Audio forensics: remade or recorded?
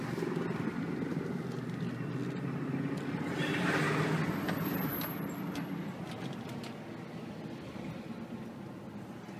recorded